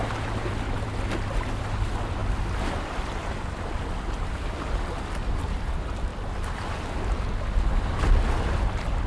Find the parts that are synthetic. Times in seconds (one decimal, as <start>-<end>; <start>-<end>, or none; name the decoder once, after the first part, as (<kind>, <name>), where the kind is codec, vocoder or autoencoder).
0.0-2.2 (vocoder, BigVGAN v2); 5.2-6.1